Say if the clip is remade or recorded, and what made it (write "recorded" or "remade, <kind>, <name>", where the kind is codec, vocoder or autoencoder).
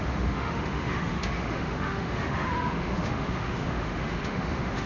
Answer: remade, autoencoder, DAC-VAE